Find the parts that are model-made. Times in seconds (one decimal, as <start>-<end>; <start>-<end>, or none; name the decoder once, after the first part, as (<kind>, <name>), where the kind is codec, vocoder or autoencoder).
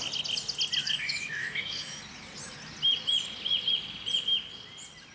0.8-2.0 (autoencoder, DAC-VAE)